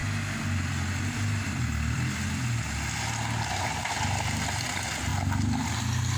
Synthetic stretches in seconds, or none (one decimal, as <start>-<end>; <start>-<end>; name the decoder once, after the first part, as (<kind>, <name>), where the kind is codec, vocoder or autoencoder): 0.0-2.3 (vocoder, BigVGAN v2)